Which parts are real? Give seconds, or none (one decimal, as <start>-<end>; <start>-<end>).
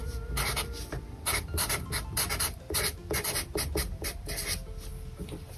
4.9-5.6